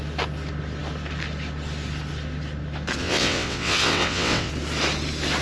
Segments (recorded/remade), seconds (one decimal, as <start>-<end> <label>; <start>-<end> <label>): 0.0-3.0 recorded; 3.0-4.5 remade; 4.5-5.4 recorded